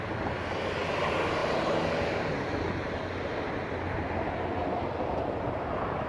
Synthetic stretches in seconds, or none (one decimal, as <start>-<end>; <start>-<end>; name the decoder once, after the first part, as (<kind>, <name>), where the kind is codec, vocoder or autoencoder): none